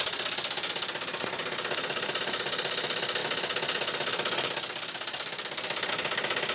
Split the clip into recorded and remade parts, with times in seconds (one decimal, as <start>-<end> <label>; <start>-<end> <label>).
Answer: 0.0-1.4 recorded; 1.4-2.2 remade; 2.2-6.5 recorded